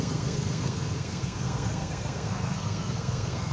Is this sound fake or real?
fake